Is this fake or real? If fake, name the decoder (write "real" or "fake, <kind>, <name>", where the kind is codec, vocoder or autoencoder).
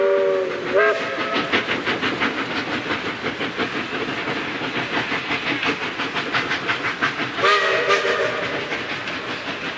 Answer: real